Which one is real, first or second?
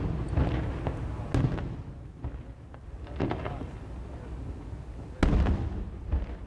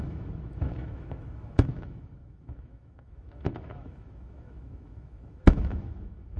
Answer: first